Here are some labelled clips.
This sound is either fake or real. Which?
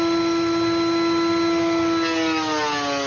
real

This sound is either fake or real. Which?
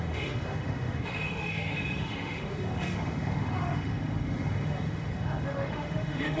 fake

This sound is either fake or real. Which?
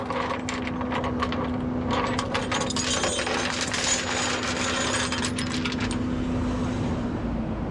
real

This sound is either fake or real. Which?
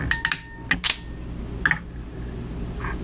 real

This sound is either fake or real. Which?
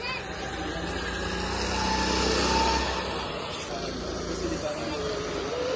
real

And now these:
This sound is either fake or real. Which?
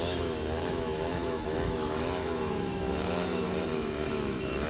fake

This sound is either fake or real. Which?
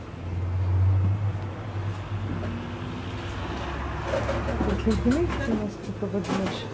real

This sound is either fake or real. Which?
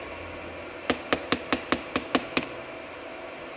real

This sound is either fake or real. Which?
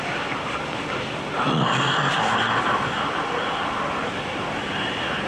real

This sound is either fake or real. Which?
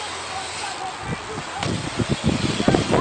real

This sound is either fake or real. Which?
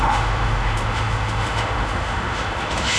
fake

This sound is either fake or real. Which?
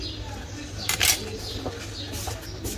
real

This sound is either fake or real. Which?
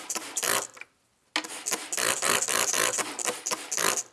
real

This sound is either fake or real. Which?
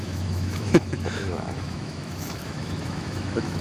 fake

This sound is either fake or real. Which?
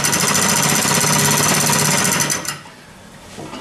real